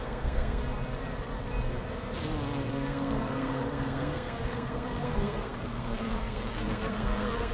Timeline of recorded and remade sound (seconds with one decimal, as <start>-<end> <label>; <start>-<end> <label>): 0.0-0.6 remade; 0.6-2.7 recorded; 2.7-7.5 remade